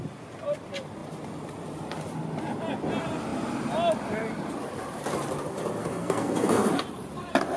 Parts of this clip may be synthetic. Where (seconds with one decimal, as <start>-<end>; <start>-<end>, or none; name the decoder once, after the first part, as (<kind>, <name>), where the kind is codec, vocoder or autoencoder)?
5.8-6.7 (codec, SNAC)